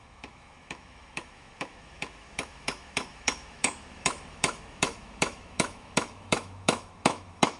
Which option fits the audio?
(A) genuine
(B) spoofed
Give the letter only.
B